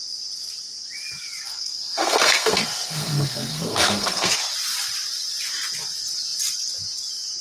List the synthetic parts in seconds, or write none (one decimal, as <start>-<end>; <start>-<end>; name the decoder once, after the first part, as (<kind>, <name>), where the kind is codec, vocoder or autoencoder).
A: 1.5-4.3 (codec, SNAC)